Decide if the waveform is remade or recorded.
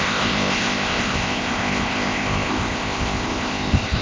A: remade